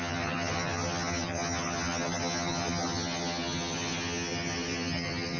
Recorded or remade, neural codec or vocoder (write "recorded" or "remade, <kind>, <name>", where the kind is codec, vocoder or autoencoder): remade, vocoder, HiFi-GAN